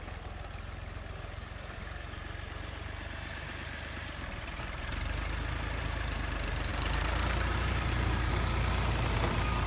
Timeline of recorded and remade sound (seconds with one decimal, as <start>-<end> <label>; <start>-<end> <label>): 0.0-9.7 remade

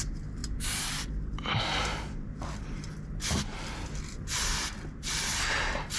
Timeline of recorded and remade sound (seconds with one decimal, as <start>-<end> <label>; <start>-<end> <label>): 0.0-6.0 recorded

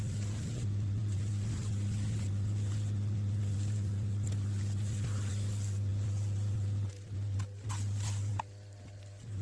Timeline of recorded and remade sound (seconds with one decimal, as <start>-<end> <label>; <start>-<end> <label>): 0.0-9.4 recorded